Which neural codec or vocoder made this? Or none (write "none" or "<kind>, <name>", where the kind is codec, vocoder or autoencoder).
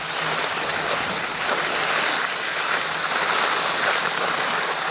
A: none